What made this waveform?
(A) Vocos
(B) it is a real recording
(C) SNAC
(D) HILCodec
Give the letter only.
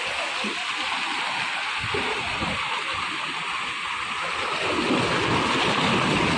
B